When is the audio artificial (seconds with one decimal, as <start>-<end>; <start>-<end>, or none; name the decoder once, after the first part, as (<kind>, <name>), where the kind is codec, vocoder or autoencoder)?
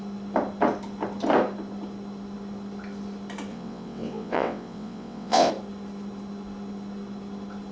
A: 3.5-5.5 (vocoder, WaveNeXt)